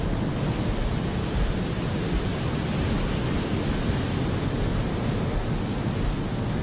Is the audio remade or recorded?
recorded